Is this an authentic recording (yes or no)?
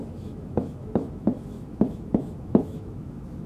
no